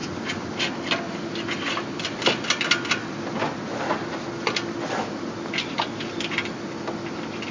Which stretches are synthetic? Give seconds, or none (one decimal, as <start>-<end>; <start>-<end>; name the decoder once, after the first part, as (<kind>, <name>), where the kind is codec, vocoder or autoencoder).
none